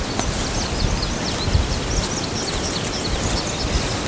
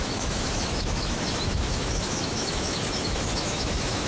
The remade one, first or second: second